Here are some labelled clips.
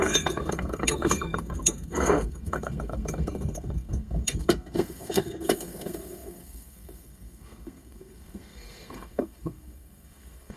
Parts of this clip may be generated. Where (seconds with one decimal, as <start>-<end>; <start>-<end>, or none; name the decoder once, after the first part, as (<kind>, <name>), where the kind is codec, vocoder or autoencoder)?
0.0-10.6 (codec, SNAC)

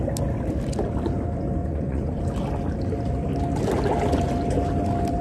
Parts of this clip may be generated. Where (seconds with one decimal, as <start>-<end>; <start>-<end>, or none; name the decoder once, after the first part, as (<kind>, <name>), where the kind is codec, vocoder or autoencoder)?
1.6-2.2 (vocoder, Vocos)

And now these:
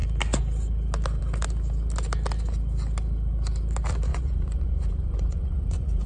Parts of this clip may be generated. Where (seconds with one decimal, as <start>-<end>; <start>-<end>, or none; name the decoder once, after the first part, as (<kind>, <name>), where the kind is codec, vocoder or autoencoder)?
4.1-6.1 (vocoder, Vocos)